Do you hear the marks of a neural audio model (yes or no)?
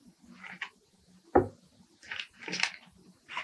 no